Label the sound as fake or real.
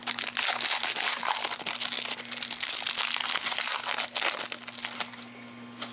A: real